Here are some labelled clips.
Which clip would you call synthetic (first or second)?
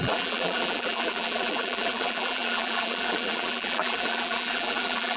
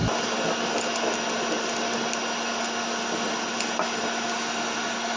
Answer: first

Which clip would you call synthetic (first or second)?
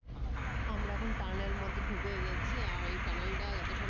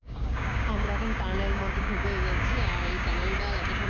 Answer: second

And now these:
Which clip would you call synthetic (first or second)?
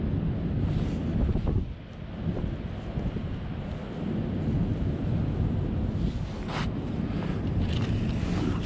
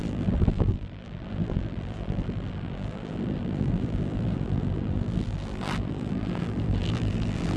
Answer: second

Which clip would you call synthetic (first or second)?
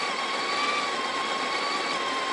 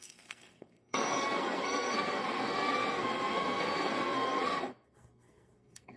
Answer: second